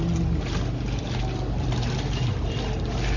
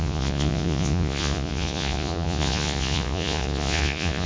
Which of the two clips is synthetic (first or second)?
second